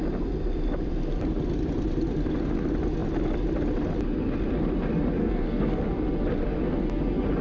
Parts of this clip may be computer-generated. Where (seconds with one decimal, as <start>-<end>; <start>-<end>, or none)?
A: 5.2-5.8